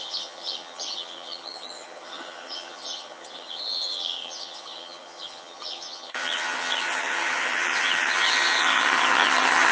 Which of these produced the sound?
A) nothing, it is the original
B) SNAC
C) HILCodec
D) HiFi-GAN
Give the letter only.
D